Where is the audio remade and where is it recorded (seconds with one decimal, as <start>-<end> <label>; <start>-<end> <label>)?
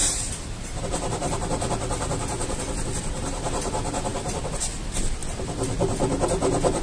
0.0-0.8 remade; 0.8-6.8 recorded